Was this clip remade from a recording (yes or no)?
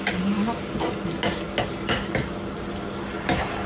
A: no